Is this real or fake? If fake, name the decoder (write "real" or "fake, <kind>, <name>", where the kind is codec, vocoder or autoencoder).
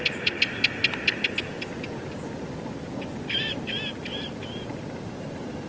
real